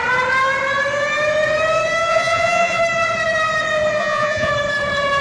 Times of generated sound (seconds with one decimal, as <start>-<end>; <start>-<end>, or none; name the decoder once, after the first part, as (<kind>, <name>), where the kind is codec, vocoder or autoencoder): 2.1-2.8 (vocoder, Vocos); 4.0-4.5